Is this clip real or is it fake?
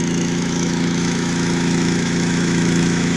fake